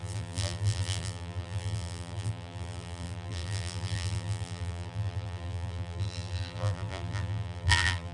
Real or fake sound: fake